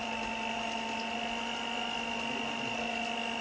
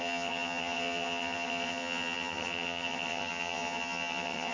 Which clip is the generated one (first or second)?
second